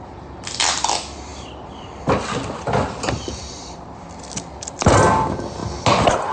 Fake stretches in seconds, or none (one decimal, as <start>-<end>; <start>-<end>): 1.3-4.4